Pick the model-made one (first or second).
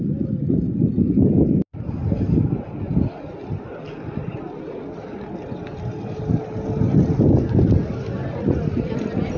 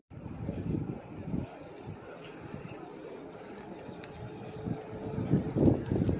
second